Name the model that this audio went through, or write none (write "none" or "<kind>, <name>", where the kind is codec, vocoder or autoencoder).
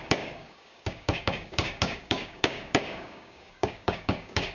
codec, DAC